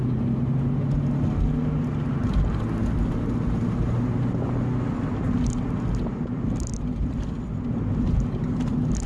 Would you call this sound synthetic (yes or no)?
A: no